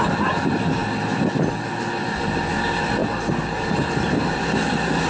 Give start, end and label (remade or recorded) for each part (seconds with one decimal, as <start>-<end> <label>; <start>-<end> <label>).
0.0-3.0 recorded; 3.0-3.9 remade; 3.9-5.1 recorded